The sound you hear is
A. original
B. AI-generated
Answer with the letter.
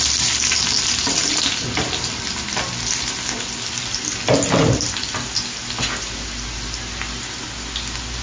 A